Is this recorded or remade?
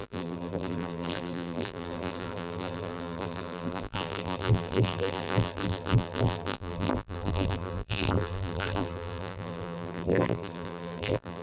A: remade